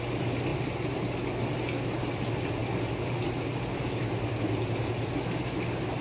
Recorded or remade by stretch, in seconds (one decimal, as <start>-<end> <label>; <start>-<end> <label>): 0.0-6.0 recorded